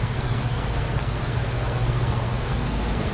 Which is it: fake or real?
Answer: fake